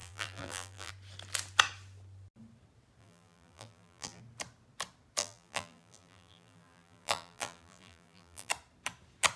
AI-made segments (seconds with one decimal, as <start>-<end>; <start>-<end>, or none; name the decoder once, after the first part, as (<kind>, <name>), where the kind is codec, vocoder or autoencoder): 0.0-0.9 (vocoder, BigVGAN v2); 3.0-4.2; 5.2-8.5